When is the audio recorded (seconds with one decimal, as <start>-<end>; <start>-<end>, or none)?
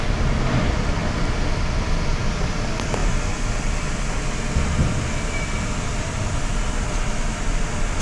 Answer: 0.0-8.0